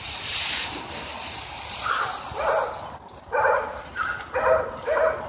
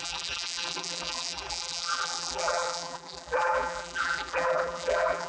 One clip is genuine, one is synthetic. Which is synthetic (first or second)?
second